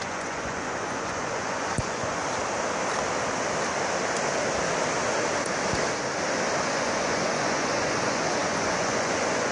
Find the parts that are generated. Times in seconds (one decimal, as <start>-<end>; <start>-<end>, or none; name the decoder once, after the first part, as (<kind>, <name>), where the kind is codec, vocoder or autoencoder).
0.0-2.2 (vocoder, Vocos); 6.6-9.5